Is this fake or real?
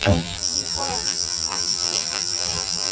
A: fake